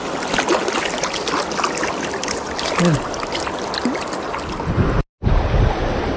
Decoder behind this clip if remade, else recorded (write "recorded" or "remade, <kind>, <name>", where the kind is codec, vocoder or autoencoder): recorded